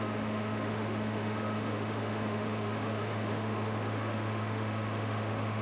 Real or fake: fake